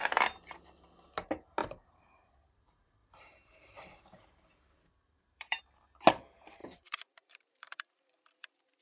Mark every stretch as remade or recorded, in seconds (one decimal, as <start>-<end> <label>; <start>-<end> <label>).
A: 0.0-1.6 recorded; 1.6-5.6 remade; 5.6-6.6 recorded; 6.6-8.8 remade